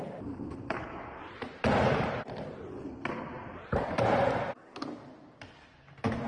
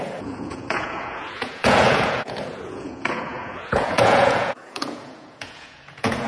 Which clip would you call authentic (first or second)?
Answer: first